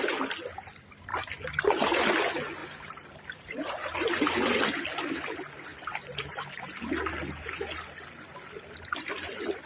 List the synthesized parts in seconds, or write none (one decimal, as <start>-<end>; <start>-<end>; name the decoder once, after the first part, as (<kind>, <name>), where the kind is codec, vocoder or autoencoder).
1.1-2.0 (vocoder, BigVGAN v2); 2.6-4.6; 5.7-6.9